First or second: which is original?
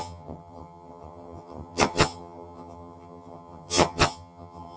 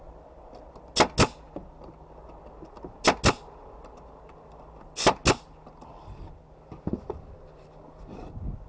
second